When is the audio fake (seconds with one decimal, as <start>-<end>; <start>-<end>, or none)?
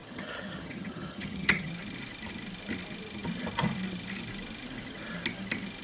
0.0-1.7